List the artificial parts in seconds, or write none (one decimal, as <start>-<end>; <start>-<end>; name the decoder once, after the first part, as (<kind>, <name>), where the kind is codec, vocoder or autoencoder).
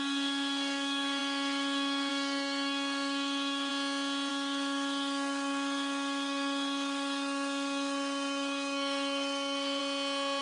0.0-3.7 (codec, DAC); 4.3-9.8